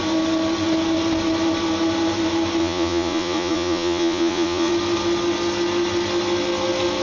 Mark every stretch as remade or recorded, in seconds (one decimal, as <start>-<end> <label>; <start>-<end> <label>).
0.0-2.6 recorded; 2.6-4.7 remade; 4.7-7.0 recorded